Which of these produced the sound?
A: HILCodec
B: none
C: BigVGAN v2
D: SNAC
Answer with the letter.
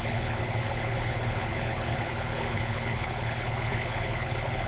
A